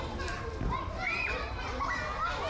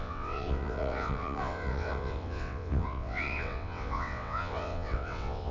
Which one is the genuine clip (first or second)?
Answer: first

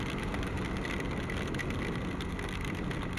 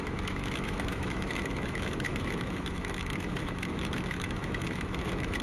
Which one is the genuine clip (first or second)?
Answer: first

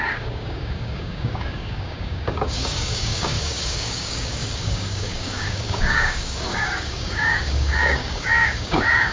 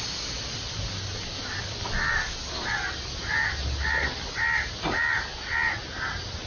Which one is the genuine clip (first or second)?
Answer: second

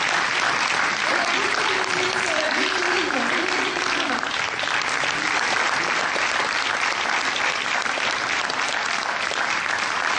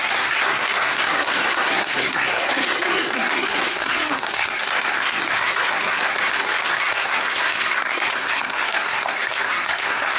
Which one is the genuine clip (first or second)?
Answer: first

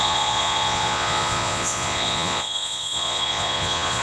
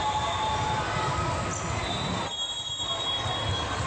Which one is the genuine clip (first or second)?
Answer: second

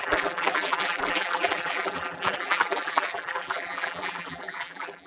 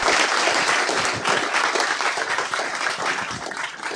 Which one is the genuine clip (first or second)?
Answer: second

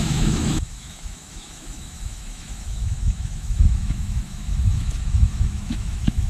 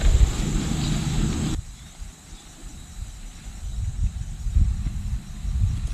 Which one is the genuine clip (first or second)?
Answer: second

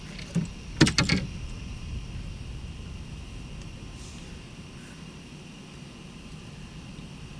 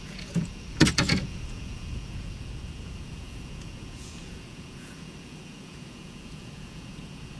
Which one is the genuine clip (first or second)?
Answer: first